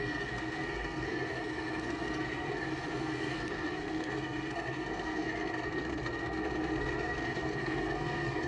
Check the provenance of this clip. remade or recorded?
remade